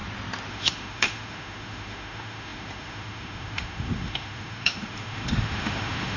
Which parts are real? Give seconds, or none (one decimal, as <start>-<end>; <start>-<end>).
0.0-0.5